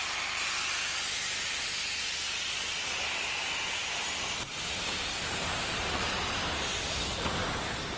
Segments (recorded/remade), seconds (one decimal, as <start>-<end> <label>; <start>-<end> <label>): 0.0-3.8 recorded; 3.8-5.0 remade; 5.0-6.7 recorded; 6.7-8.0 remade